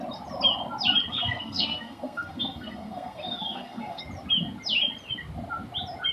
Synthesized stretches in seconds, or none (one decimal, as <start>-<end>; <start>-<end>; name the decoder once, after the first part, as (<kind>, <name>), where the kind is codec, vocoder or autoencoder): 1.1-4.0 (codec, SNAC)